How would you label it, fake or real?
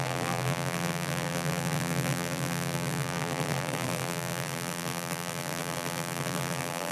fake